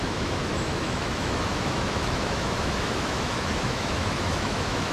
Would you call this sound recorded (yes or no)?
no